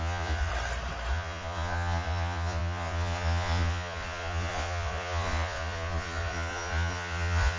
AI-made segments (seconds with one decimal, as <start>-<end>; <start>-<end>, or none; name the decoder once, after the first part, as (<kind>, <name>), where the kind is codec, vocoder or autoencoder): 0.0-0.5 (vocoder, Vocos); 1.1-7.6